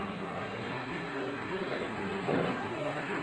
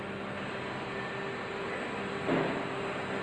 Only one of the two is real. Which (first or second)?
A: second